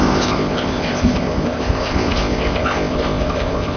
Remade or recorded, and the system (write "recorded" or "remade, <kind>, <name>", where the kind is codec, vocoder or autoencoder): remade, codec, ZipCodec